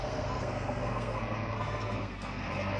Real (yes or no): no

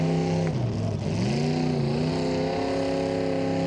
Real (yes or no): yes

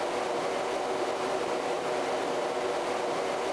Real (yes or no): yes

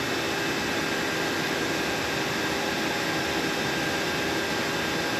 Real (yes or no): yes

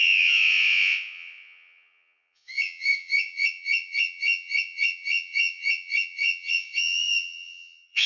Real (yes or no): no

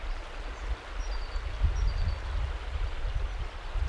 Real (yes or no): yes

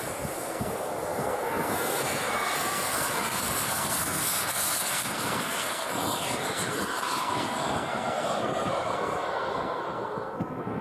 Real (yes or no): no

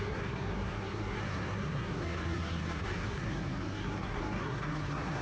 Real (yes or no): no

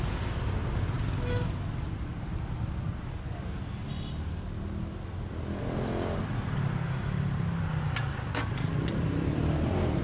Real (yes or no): yes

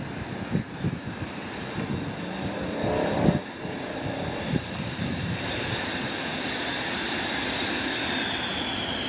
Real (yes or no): yes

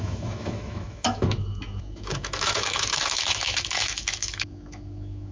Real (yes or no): no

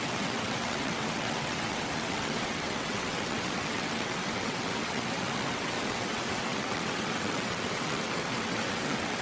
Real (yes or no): no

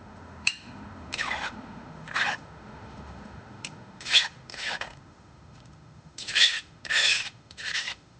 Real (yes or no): no